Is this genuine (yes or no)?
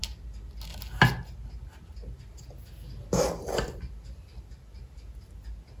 yes